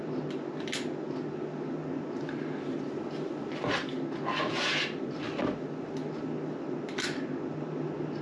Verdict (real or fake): real